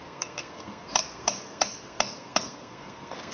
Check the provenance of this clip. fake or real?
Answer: fake